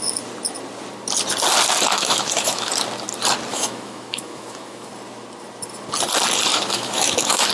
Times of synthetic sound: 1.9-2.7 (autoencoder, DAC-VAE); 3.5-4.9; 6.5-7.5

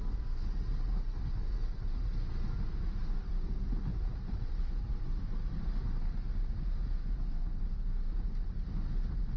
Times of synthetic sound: 3.9-4.8 (vocoder, BigVGAN v2)